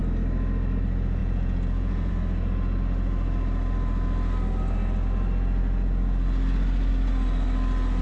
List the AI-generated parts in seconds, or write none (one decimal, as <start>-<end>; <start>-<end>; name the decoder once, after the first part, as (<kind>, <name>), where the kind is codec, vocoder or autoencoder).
1.2-2.1 (vocoder, Vocos)